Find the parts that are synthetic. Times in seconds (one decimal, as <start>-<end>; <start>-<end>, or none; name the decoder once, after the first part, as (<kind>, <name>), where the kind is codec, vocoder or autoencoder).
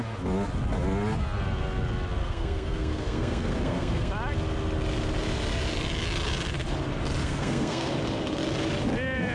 2.2-4.1 (codec, SNAC); 7.2-7.9